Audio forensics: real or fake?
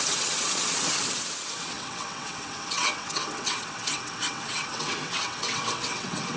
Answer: fake